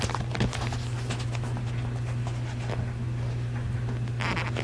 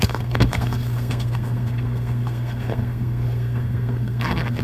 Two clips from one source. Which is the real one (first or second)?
first